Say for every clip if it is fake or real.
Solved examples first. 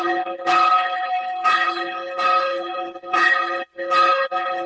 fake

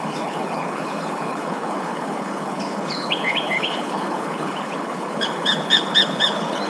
fake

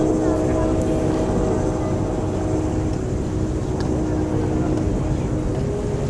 real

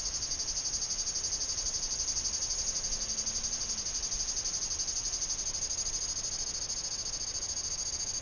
real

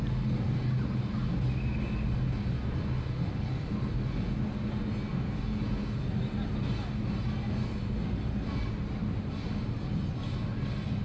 real